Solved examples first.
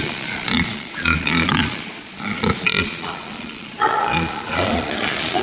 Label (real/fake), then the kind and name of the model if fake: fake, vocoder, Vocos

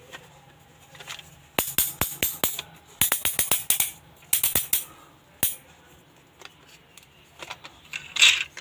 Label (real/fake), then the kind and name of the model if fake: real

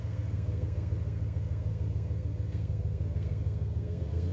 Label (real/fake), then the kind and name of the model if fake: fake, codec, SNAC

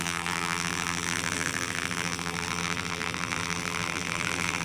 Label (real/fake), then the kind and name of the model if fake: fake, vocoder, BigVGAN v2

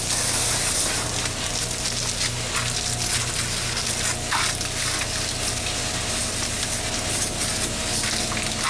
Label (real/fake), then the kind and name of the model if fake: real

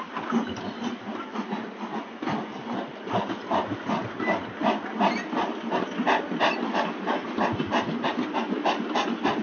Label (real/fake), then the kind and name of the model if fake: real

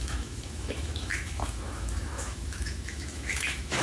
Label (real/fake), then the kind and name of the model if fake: fake, autoencoder, DAC-VAE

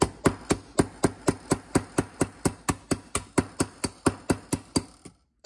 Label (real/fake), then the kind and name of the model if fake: real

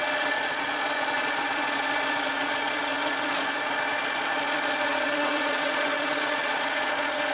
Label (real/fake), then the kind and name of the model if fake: fake, vocoder, Vocos